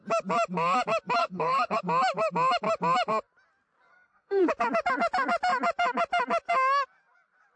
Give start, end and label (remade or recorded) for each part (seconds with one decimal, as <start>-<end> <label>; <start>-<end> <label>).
0.0-1.2 recorded; 1.2-1.8 remade; 1.8-3.9 recorded; 3.9-4.4 remade; 4.4-7.6 recorded